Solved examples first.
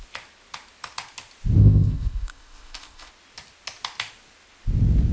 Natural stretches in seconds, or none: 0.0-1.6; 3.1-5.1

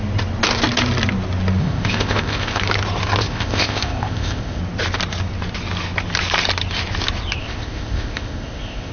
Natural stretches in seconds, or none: 0.0-1.6; 2.6-3.2; 4.6-7.4